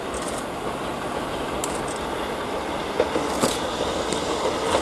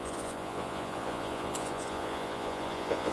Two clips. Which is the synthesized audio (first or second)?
second